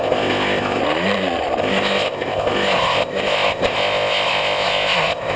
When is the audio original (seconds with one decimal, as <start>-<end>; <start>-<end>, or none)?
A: 0.8-1.6